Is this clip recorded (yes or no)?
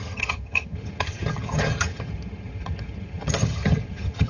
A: no